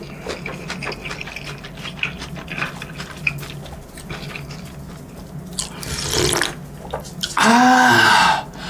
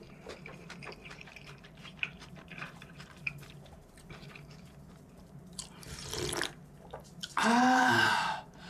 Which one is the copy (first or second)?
second